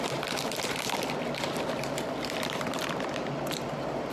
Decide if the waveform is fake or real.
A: fake